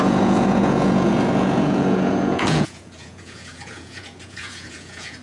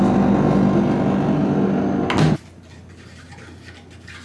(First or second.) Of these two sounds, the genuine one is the second